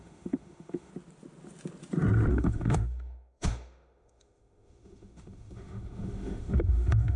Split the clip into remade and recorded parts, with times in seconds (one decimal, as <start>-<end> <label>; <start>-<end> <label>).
0.0-0.9 remade; 0.9-2.3 recorded; 2.3-7.2 remade